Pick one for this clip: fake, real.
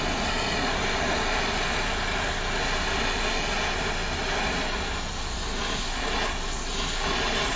real